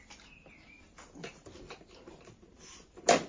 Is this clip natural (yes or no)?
yes